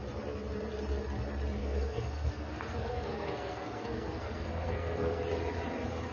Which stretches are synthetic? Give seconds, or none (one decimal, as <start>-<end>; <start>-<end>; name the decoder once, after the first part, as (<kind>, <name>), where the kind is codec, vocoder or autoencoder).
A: 1.6-5.2 (codec, SNAC)